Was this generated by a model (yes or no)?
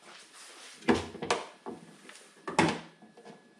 no